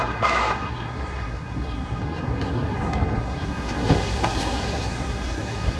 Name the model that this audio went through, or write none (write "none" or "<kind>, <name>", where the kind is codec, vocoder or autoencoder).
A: codec, SNAC